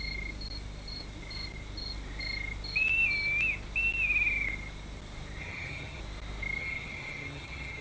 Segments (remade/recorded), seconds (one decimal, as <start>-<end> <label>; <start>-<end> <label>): 0.0-5.4 recorded; 5.4-6.0 remade; 6.0-6.6 recorded; 6.6-7.8 remade